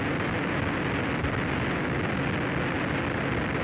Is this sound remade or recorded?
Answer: recorded